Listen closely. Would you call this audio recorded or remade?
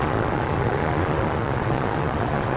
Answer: remade